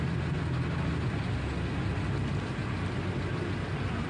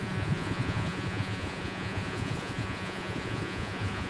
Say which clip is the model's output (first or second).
second